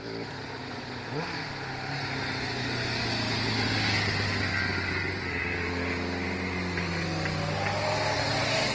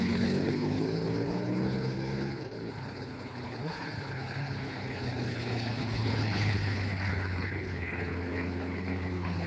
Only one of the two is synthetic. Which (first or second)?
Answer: second